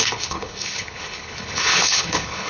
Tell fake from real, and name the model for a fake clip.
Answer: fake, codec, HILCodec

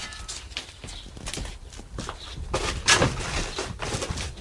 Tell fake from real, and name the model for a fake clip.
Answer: real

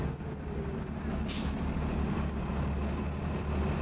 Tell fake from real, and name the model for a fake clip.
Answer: real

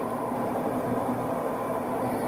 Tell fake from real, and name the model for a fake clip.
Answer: fake, vocoder, BigVGAN v2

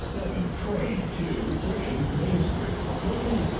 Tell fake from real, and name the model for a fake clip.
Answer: real